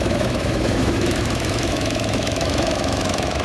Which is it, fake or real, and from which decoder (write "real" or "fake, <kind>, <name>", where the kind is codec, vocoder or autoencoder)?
fake, autoencoder, DAC-VAE